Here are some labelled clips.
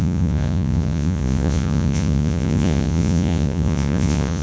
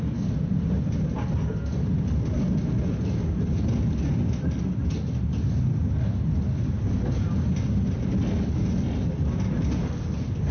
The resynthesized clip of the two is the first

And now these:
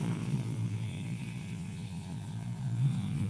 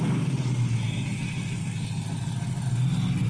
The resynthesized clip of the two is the first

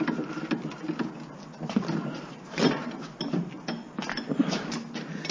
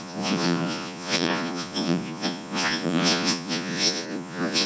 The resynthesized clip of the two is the second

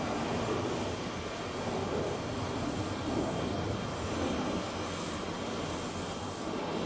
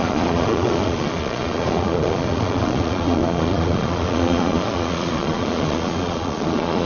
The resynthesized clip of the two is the second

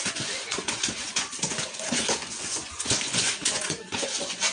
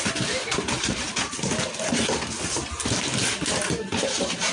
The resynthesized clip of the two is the first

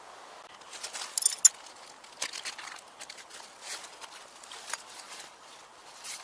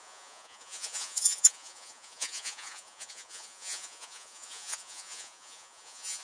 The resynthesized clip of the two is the second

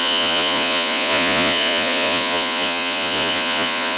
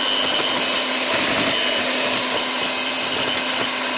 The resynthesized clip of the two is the first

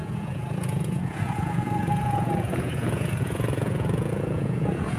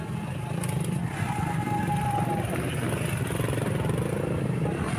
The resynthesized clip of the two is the first